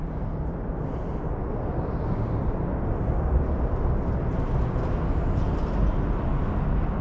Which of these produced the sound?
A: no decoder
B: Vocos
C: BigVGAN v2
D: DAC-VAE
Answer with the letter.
A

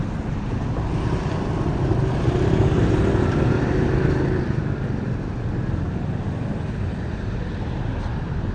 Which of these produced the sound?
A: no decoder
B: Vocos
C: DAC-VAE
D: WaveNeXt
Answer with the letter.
A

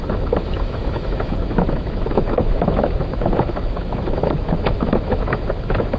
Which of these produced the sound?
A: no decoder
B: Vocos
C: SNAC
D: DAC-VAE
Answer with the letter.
D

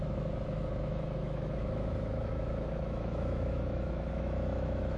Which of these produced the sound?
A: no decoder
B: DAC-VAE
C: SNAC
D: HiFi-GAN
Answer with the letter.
B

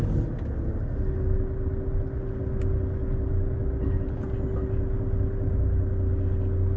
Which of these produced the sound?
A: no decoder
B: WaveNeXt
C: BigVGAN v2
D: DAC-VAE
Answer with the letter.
A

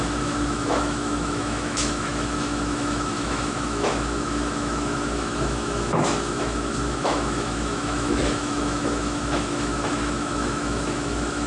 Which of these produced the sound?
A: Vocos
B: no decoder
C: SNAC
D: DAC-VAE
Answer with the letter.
D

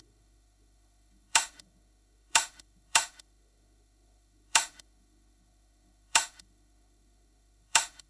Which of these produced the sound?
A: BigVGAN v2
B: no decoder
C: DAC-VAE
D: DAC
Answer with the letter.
C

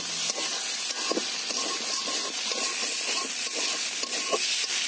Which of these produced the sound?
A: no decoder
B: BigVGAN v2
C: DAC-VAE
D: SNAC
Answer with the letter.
A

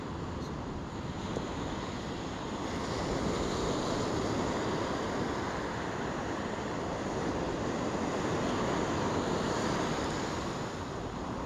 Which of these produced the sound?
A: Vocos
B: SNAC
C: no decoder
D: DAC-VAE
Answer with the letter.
C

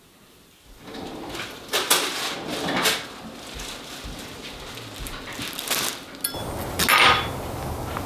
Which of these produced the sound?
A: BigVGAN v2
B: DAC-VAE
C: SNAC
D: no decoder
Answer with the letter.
D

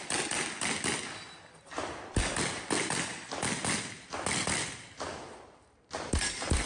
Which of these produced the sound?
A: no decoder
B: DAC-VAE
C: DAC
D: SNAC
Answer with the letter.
A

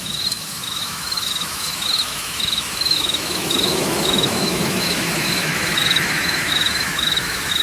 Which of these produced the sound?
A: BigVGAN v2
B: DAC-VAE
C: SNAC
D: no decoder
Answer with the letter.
B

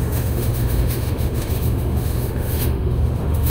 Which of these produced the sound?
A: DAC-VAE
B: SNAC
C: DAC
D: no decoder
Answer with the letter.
A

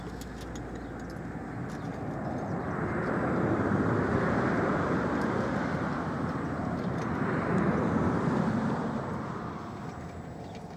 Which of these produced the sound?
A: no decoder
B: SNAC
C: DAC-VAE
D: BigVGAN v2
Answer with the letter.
A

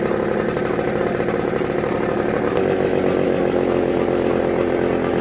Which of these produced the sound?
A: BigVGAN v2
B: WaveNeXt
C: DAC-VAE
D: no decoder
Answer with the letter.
D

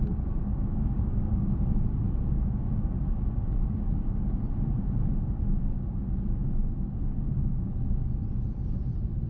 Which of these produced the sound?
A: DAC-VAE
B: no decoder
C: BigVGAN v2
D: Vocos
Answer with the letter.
B